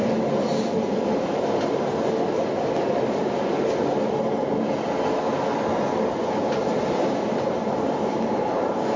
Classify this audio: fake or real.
real